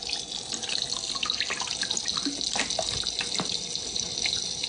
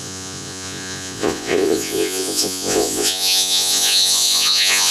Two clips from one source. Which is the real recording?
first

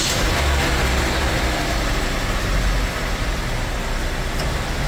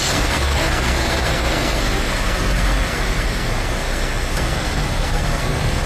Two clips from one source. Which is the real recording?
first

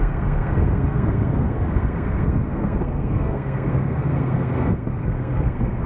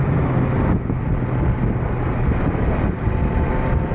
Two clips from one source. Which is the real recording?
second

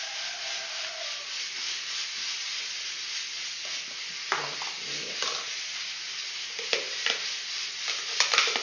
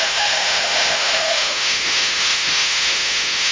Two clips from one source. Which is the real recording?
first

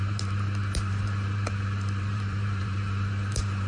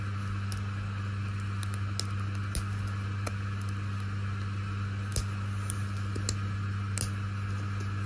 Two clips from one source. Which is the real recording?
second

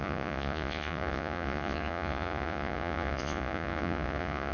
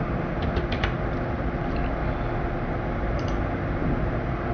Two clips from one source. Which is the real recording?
second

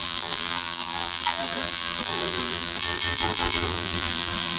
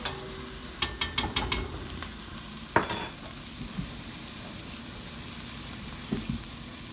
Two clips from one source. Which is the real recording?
second